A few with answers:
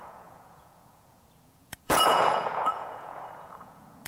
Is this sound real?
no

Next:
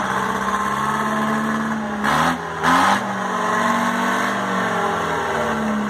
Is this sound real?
yes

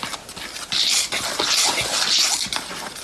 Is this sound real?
yes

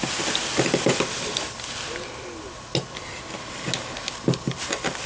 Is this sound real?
yes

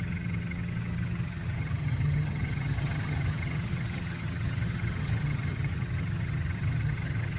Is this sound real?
no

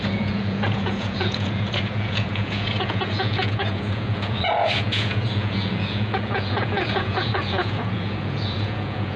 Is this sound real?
no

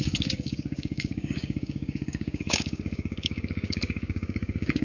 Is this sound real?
no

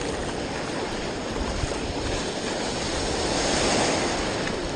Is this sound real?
yes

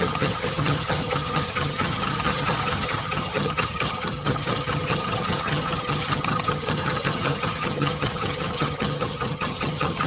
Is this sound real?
no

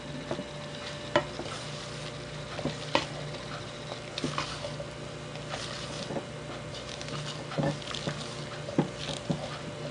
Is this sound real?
yes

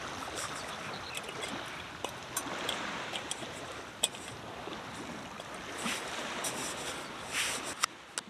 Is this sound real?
yes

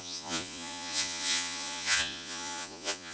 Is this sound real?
no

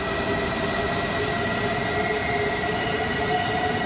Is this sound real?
yes